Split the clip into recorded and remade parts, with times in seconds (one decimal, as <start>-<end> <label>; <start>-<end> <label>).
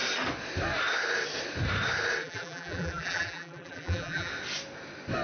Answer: 0.0-2.2 recorded; 2.2-4.3 remade; 4.3-5.2 recorded